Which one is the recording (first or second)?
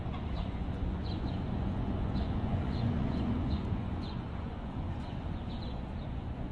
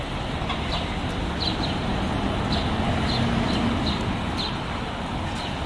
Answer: second